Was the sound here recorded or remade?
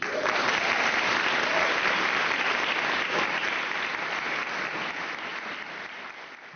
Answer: recorded